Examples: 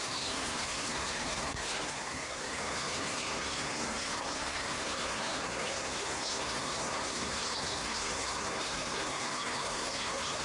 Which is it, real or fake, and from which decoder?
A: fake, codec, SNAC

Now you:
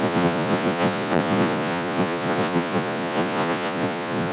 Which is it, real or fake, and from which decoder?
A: fake, vocoder, Vocos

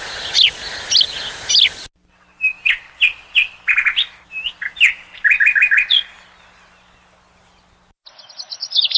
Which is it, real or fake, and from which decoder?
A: real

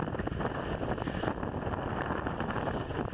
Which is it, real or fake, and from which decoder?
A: real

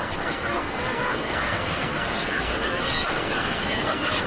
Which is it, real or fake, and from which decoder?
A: fake, codec, SNAC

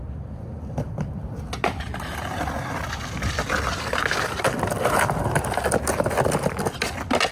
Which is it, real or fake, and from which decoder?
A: real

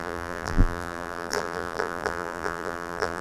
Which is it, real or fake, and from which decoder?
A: fake, vocoder, BigVGAN v2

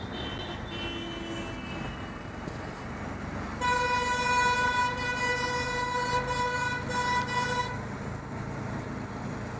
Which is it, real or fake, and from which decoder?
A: real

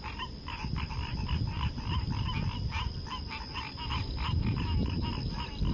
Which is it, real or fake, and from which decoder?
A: real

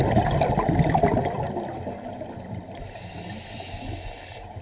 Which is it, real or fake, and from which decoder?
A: real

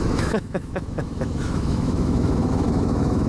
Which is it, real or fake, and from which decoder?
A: fake, autoencoder, DAC-VAE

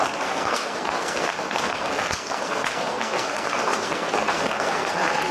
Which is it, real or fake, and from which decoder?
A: fake, codec, SNAC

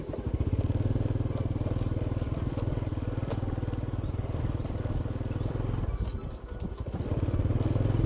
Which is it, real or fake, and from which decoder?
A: fake, vocoder, BigVGAN v2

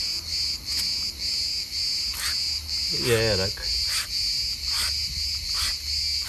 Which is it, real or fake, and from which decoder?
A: real